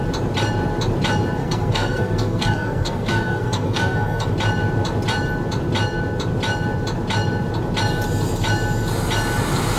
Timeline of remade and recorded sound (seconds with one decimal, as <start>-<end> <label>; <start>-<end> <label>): 0.0-1.4 recorded; 1.4-4.3 remade; 4.3-9.8 recorded

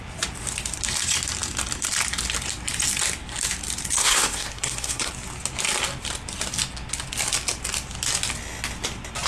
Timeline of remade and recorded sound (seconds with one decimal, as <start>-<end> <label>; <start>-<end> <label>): 0.0-4.0 recorded; 4.0-5.1 remade; 5.1-9.3 recorded

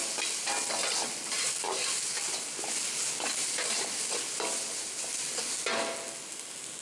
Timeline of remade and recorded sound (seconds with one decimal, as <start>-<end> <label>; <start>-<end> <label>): 0.0-6.8 recorded

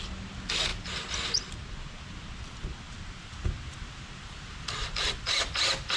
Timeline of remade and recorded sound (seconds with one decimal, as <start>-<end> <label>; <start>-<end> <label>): 0.0-6.0 recorded

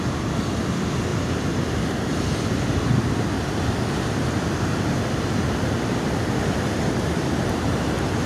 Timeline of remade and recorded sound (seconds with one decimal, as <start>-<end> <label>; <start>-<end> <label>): 0.0-8.3 recorded